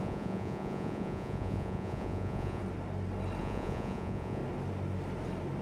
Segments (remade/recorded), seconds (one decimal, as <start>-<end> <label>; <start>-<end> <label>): 0.0-2.6 remade; 2.6-3.4 recorded; 3.4-4.4 remade; 4.4-5.6 recorded